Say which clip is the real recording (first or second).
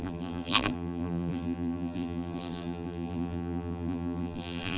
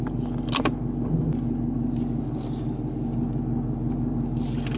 second